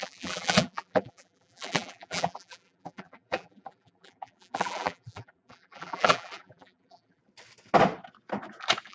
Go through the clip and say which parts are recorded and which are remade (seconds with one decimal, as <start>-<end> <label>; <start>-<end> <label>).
0.0-7.2 remade; 7.2-8.9 recorded